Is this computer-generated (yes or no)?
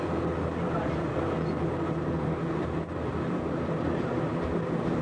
yes